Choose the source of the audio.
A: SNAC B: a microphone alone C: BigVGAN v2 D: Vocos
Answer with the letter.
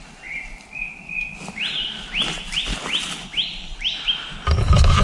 B